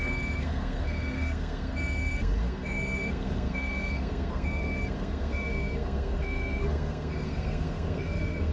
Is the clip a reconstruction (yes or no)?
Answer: yes